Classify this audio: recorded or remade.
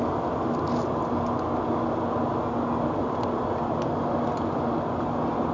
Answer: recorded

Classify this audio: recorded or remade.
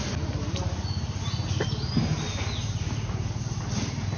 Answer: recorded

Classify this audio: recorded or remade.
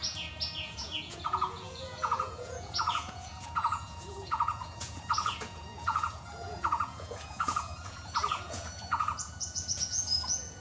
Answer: remade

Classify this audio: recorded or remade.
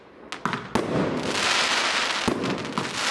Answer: recorded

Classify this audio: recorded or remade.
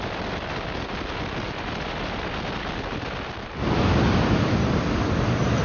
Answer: recorded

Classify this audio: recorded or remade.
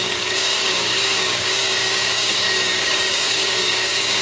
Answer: remade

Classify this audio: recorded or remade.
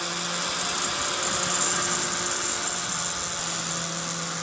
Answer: recorded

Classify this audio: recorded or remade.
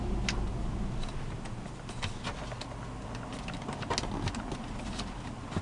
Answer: recorded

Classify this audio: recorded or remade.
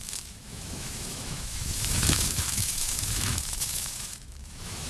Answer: remade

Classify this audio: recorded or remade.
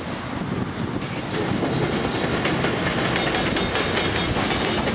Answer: recorded